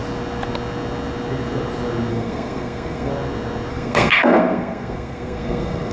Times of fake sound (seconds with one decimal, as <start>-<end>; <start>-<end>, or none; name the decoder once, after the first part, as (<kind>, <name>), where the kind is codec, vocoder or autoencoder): 2.1-3.1 (codec, SNAC); 3.7-5.9